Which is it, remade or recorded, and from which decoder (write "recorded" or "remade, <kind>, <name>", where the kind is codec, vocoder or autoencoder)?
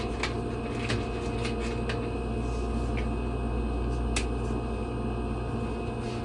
recorded